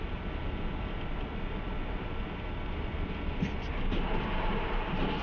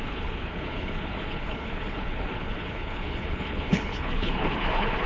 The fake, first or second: second